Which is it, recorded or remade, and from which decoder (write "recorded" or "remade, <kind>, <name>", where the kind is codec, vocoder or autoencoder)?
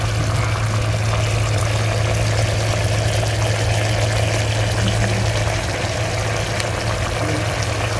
recorded